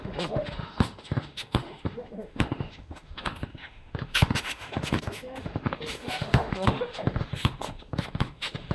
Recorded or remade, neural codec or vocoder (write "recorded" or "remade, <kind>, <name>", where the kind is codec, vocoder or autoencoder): remade, autoencoder, DAC-VAE